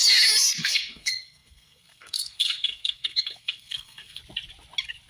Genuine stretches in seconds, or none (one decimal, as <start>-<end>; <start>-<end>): 0.0-0.6; 4.2-5.1